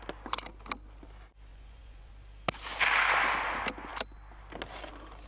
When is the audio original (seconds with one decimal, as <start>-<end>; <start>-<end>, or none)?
0.0-1.5; 2.1-5.3